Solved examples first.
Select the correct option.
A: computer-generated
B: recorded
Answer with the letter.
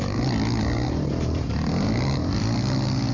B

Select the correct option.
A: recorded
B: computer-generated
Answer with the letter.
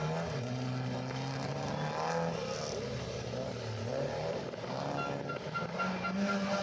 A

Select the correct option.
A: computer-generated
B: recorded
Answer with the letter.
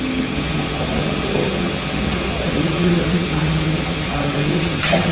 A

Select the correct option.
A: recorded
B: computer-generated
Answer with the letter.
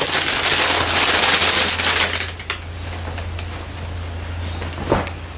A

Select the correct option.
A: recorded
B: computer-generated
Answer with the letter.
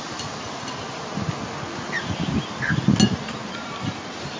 A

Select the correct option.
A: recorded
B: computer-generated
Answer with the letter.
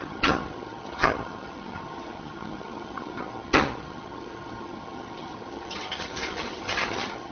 B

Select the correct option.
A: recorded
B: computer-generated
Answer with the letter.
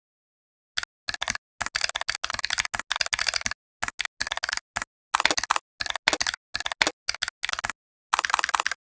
A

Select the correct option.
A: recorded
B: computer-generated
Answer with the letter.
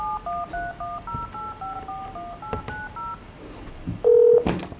A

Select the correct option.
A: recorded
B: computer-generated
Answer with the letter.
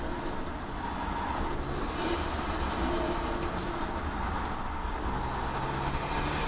A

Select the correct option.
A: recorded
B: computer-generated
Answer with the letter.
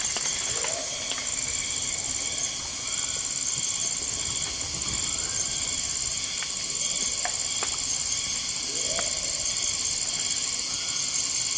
A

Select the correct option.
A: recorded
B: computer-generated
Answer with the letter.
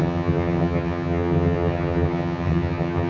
B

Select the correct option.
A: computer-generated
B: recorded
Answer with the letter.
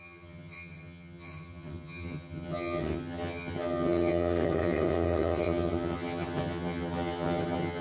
A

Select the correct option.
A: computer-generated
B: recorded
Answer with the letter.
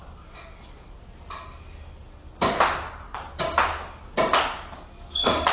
B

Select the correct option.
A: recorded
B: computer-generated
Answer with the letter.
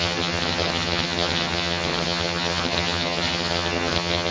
B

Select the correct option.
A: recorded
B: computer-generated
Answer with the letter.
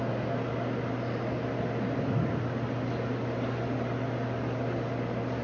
A